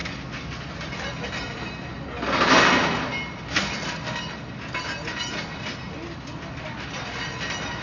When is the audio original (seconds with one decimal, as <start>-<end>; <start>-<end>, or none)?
0.0-7.8